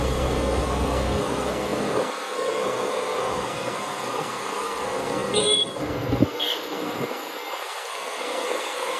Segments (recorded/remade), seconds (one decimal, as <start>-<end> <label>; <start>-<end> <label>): 0.0-9.0 remade